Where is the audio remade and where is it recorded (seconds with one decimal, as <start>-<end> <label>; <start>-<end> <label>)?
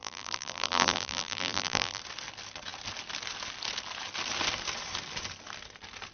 0.0-2.0 remade; 2.0-6.1 recorded